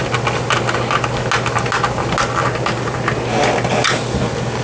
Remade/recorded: recorded